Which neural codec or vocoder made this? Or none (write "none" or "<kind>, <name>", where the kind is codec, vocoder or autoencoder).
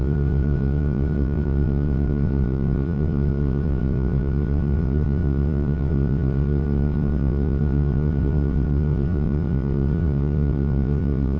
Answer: vocoder, WaveNeXt